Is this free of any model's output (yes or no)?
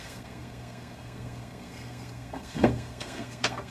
no